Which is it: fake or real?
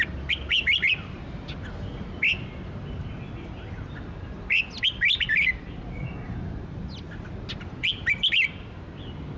real